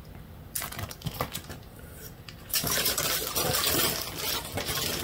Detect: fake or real real